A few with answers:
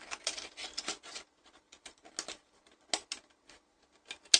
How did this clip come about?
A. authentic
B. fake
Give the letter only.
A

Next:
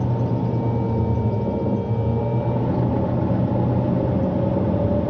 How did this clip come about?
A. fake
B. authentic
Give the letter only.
B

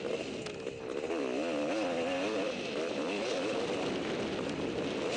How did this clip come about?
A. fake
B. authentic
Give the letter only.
B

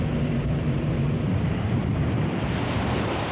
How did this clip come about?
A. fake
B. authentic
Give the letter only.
A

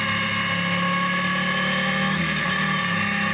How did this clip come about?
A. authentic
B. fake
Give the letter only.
A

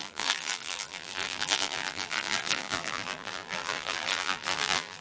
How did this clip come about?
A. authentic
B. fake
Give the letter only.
B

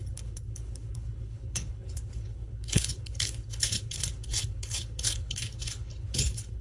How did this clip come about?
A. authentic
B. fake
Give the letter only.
B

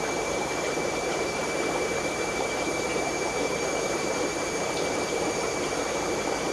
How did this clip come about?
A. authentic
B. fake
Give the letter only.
B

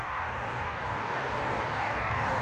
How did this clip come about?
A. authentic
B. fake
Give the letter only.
B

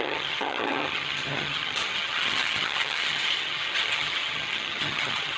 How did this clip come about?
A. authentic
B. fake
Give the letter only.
B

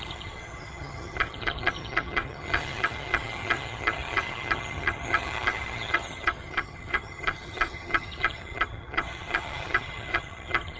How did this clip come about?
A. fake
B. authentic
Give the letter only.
A